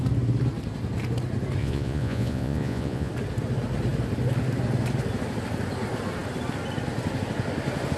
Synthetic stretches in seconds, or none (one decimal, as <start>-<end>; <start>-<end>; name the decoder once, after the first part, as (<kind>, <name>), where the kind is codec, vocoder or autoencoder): 1.6-3.1 (vocoder, Vocos)